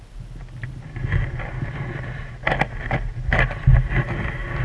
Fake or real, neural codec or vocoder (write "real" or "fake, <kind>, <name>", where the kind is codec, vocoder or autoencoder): real